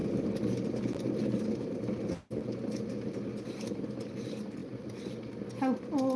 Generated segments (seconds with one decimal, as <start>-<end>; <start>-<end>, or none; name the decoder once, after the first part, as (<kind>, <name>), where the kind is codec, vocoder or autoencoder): none